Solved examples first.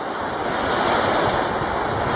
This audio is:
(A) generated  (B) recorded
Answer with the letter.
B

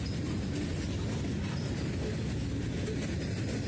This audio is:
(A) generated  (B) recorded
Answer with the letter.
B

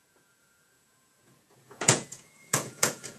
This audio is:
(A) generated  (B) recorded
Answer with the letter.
A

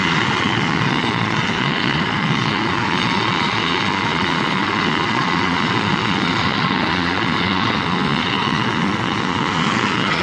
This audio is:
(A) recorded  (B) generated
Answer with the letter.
B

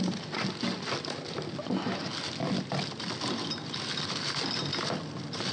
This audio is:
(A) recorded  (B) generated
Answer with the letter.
A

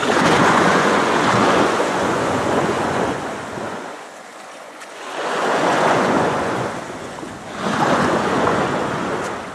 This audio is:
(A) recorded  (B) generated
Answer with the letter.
B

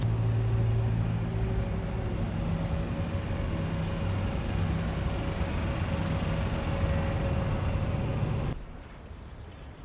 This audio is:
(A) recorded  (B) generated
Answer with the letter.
A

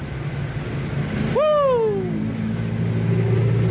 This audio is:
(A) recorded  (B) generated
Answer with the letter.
A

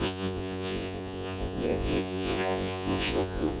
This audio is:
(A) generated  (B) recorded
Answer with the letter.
A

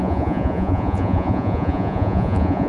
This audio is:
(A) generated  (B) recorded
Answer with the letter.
A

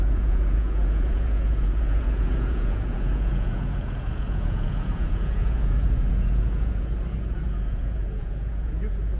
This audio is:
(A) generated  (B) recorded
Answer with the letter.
A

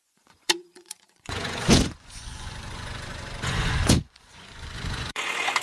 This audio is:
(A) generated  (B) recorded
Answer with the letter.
A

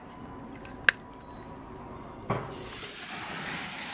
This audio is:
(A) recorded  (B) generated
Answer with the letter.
A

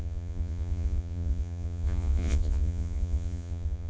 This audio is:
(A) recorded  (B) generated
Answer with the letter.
B